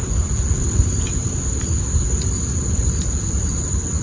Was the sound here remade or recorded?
recorded